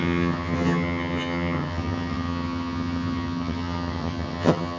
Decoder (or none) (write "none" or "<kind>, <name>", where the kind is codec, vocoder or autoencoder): vocoder, HiFi-GAN